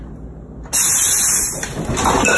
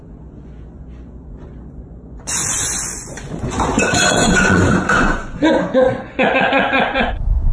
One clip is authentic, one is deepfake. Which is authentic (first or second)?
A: first